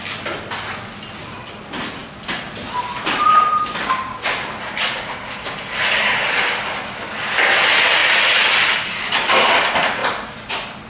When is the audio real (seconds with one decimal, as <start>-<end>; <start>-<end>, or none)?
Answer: 0.0-8.0; 9.6-10.0; 10.5-10.9